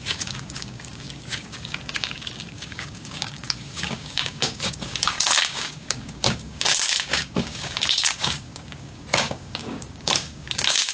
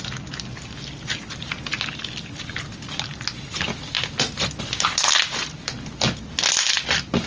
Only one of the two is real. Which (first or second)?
second